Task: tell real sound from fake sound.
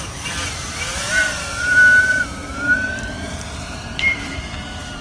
fake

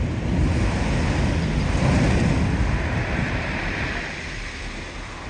real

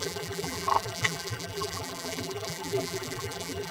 fake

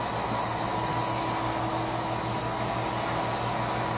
real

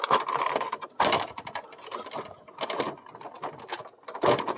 real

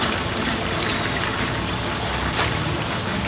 fake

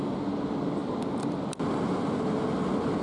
real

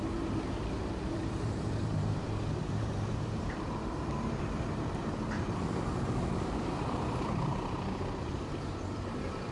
fake